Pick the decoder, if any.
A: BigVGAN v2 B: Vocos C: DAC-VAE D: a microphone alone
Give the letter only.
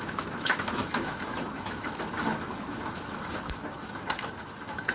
C